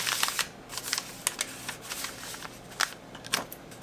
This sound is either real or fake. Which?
real